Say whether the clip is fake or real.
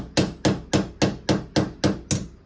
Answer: real